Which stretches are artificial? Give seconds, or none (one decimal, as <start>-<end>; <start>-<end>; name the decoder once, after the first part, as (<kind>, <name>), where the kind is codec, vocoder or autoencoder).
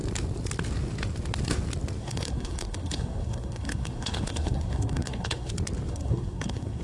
2.0-5.5 (codec, SNAC); 5.9-6.8